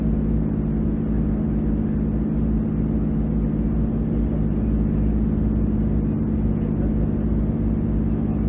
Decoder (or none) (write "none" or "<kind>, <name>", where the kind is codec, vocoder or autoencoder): none